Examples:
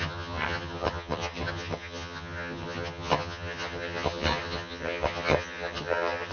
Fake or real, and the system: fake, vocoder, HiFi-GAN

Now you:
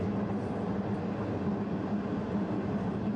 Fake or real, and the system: real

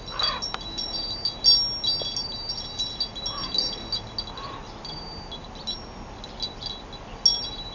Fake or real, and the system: real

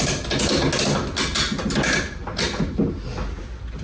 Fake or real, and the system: real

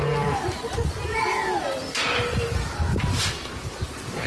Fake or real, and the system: real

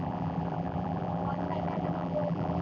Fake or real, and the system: fake, vocoder, BigVGAN v2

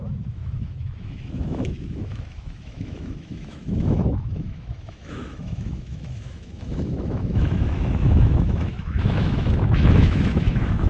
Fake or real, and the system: fake, autoencoder, DAC-VAE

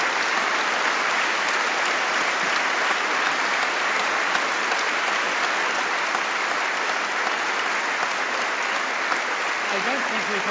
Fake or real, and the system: real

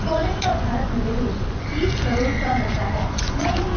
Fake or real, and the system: fake, vocoder, Vocos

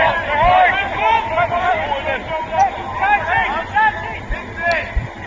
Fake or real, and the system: real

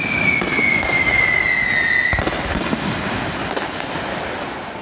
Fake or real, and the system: real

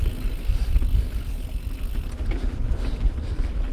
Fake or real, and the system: real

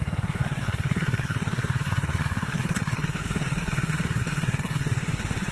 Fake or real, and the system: fake, codec, SNAC